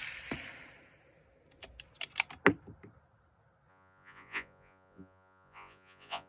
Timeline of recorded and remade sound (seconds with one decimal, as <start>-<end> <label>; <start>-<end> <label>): 0.0-3.7 recorded; 3.7-6.3 remade